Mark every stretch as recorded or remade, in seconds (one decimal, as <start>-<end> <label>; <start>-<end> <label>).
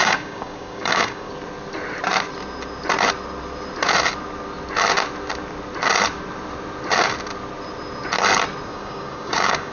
0.0-1.3 remade; 1.3-8.7 recorded; 8.7-9.7 remade